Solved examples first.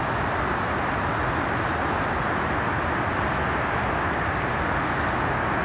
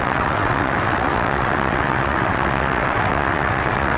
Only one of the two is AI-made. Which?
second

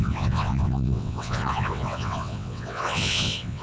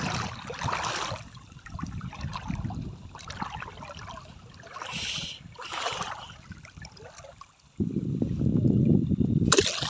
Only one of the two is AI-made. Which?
first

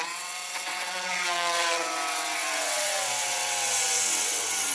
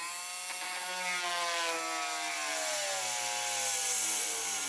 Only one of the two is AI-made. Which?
first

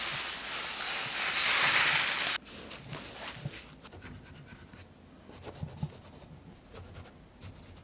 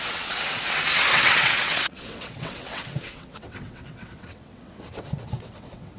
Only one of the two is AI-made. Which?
second